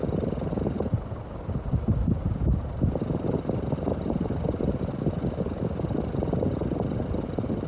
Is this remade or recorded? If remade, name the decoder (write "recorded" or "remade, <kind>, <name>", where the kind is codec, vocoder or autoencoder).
recorded